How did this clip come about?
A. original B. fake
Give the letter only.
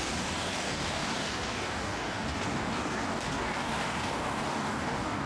B